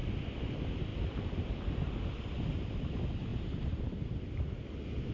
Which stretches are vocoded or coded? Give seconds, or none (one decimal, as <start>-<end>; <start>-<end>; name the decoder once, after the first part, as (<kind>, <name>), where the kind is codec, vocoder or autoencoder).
0.9-2.9 (vocoder, BigVGAN v2); 3.3-4.5